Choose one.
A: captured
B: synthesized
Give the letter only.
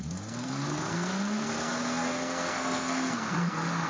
B